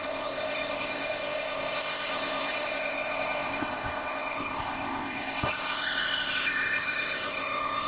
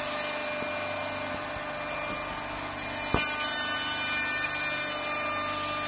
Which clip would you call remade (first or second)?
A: first